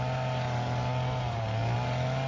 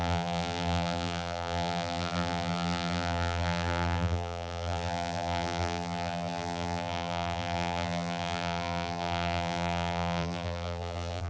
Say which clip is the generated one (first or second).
second